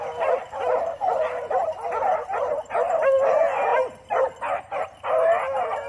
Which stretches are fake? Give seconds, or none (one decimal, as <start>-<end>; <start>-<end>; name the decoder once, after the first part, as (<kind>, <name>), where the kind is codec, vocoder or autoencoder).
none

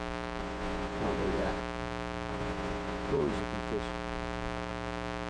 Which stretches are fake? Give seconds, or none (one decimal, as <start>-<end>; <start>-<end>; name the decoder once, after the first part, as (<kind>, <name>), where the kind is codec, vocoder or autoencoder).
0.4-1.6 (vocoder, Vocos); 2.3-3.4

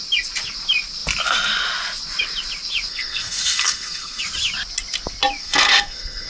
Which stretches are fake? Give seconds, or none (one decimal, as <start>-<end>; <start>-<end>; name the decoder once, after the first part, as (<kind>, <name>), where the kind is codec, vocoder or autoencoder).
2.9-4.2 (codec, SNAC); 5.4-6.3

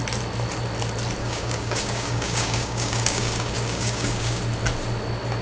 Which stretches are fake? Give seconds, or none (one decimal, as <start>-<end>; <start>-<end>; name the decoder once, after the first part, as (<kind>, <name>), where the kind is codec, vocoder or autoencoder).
1.2-4.4 (codec, DAC)

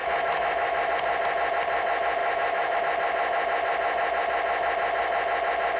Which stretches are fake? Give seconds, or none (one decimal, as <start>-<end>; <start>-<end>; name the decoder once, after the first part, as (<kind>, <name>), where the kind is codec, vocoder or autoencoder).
0.0-0.9 (autoencoder, DAC-VAE); 2.2-2.8

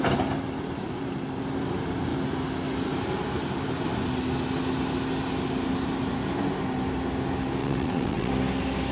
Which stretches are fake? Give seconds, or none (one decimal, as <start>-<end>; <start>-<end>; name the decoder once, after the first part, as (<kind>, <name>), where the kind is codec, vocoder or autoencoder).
7.6-8.3 (vocoder, WaveNeXt)